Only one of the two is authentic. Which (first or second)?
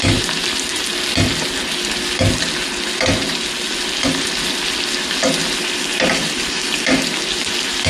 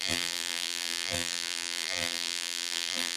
first